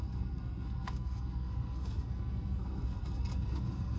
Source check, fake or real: fake